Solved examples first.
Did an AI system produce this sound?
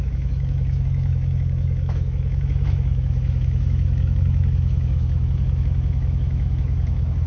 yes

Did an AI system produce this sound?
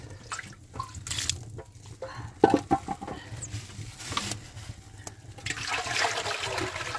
no